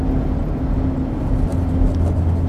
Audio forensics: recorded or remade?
recorded